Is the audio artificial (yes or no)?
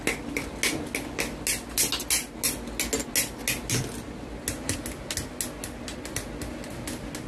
no